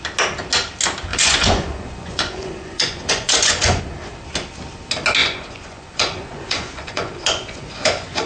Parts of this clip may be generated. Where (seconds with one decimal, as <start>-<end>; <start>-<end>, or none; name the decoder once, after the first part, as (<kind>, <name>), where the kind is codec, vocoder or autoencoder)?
1.1-3.8 (vocoder, Vocos); 5.2-8.3